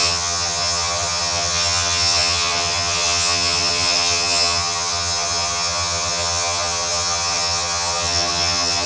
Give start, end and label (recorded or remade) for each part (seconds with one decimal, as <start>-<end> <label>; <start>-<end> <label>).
0.0-8.9 remade